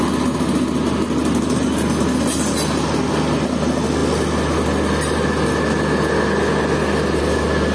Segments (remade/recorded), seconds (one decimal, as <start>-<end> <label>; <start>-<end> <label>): 0.0-7.7 recorded